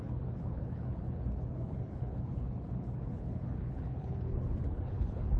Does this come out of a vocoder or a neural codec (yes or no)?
yes